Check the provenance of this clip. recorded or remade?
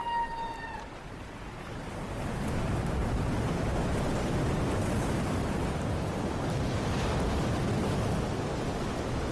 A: recorded